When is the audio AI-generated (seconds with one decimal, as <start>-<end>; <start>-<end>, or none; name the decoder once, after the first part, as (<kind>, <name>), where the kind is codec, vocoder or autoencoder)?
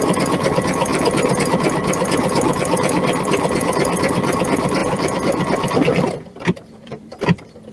0.9-1.4 (vocoder, BigVGAN v2); 4.8-7.2